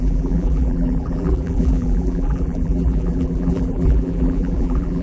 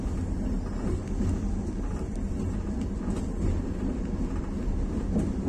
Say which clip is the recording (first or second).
second